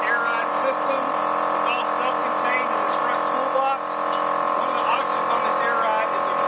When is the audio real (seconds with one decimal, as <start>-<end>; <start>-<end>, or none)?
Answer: 0.0-0.5; 1.2-2.2; 3.0-6.5